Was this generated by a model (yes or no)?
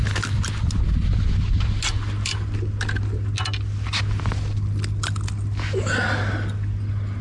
no